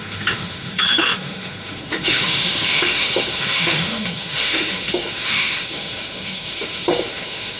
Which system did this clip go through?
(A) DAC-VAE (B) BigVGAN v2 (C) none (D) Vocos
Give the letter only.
A